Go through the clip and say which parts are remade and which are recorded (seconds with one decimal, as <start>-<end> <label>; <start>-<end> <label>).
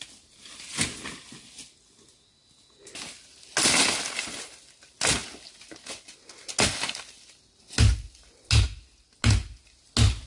0.0-10.3 recorded